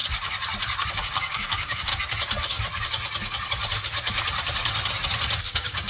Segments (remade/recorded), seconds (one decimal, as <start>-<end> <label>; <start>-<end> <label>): 0.0-0.9 recorded; 0.9-1.9 remade; 1.9-5.4 recorded; 5.4-5.9 remade